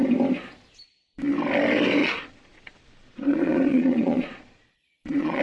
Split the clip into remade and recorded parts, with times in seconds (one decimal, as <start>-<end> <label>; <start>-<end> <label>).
0.0-2.0 recorded; 2.0-5.4 remade